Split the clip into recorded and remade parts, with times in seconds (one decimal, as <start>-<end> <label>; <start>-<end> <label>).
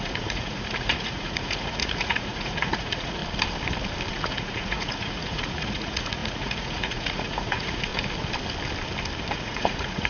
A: 0.0-3.2 remade; 3.2-4.1 recorded; 4.1-7.9 remade; 7.9-9.3 recorded; 9.3-10.1 remade